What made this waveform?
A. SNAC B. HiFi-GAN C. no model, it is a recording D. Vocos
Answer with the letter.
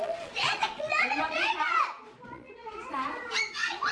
D